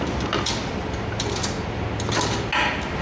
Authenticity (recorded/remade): recorded